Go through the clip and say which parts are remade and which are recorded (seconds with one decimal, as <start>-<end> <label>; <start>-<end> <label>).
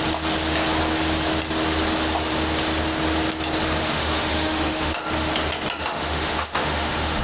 0.0-3.8 recorded; 3.8-5.0 remade; 5.0-5.8 recorded; 5.8-7.2 remade